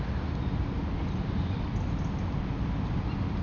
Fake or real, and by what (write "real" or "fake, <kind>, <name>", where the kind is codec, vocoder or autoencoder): real